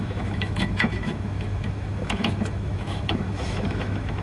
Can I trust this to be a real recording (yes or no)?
no